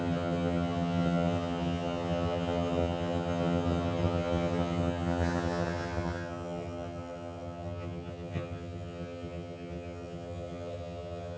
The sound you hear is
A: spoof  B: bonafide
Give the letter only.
A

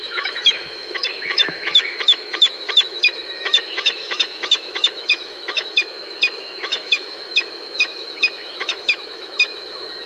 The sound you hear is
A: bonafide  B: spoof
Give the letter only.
B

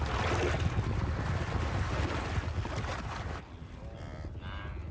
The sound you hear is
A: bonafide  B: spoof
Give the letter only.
A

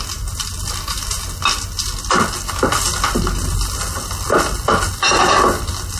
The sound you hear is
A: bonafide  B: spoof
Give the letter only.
A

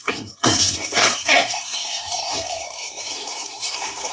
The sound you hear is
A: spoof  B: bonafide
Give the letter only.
A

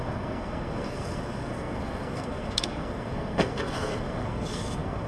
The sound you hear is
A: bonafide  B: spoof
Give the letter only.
B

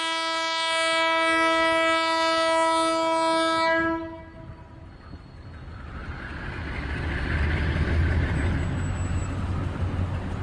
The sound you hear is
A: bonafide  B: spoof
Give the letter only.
A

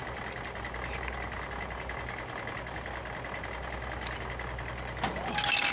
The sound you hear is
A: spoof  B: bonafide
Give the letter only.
B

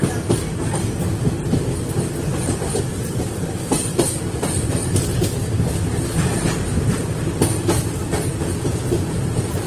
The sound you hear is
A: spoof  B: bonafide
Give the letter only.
B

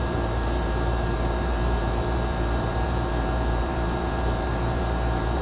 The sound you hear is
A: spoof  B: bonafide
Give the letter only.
A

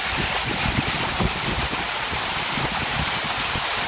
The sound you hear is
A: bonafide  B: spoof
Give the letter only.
A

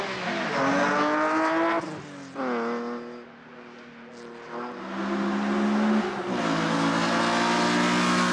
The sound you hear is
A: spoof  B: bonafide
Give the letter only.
B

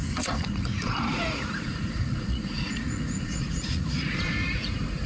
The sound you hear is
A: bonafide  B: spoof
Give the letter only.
B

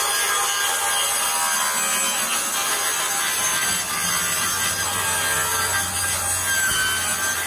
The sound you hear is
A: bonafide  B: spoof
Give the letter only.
A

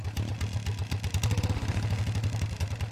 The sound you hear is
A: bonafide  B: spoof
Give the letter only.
A